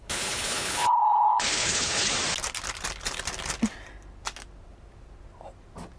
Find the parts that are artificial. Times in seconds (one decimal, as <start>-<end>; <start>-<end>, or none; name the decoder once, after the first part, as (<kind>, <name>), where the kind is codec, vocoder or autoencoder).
0.0-2.1 (codec, HILCodec)